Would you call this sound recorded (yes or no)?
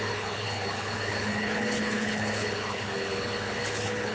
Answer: no